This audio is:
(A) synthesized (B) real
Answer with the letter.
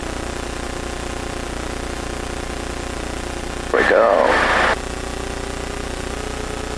B